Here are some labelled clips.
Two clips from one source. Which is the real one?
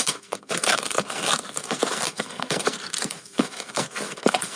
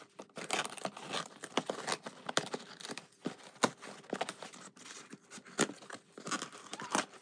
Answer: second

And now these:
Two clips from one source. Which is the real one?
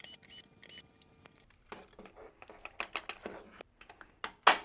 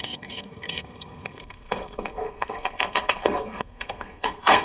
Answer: first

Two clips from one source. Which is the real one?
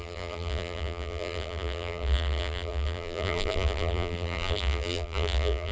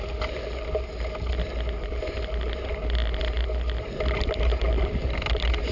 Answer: second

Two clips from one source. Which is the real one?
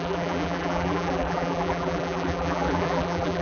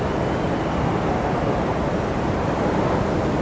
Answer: second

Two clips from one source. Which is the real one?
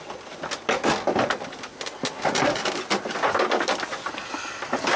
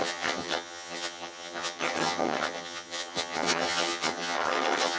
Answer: first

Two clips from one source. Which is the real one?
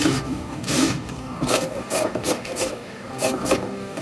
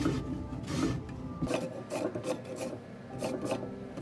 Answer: second